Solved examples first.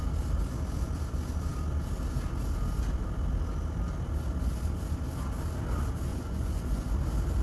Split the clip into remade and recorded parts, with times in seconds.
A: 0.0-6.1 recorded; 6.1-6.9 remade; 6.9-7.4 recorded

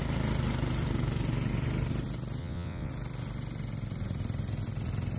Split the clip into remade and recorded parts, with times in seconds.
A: 0.0-2.4 recorded; 2.4-2.9 remade; 2.9-5.2 recorded

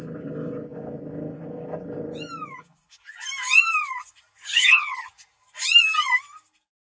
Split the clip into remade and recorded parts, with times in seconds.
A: 0.0-4.4 recorded; 4.4-5.1 remade; 5.1-6.8 recorded

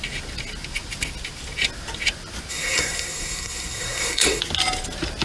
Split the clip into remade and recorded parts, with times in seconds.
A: 0.0-2.5 recorded; 2.5-4.4 remade; 4.4-5.2 recorded

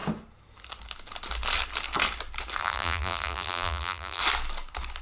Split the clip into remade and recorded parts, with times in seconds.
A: 0.0-2.6 recorded; 2.6-4.2 remade; 4.2-5.0 recorded

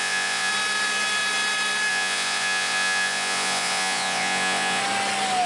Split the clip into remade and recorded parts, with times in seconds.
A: 0.0-0.5 remade; 0.5-1.9 recorded; 1.9-4.8 remade; 4.8-5.5 recorded

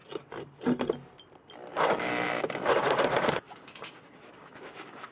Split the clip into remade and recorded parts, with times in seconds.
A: 0.0-1.7 recorded; 1.7-2.1 remade; 2.1-3.3 recorded; 3.3-5.1 remade